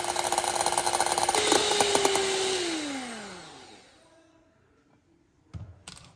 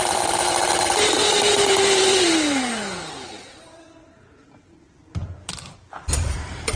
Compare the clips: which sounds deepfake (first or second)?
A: second